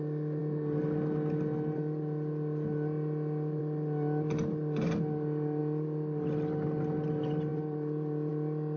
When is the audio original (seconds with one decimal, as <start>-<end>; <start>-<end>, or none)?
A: 0.0-8.8